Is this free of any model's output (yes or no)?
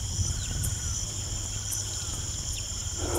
no